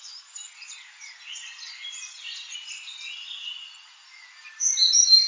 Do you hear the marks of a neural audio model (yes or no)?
no